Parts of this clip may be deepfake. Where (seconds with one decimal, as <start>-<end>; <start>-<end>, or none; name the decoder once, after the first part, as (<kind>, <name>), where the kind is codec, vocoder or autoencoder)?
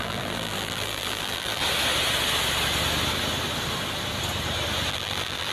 0.0-1.6 (vocoder, BigVGAN v2); 4.9-5.5